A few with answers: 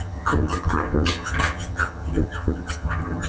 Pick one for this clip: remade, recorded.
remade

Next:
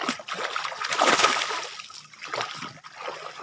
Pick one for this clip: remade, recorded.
recorded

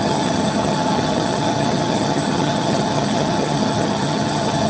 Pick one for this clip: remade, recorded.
remade